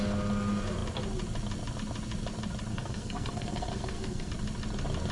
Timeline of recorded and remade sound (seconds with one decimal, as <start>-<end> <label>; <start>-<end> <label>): 0.0-2.7 recorded; 2.7-4.3 remade; 4.3-5.1 recorded